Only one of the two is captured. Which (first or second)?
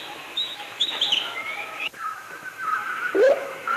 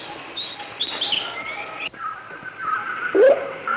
second